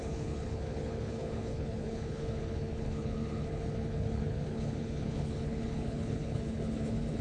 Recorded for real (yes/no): no